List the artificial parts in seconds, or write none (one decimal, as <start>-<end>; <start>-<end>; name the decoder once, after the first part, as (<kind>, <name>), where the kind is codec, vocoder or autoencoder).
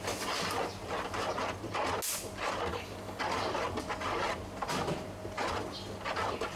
2.7-3.2 (codec, DAC)